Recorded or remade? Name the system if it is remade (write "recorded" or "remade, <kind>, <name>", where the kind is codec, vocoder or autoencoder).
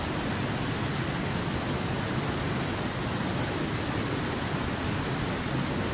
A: recorded